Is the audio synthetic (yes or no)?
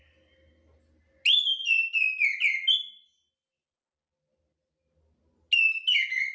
no